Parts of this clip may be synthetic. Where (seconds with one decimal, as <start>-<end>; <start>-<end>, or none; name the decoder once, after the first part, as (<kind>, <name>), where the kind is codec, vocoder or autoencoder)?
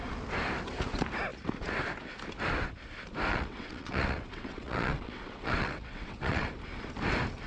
3.3-6.5 (vocoder, WaveNeXt)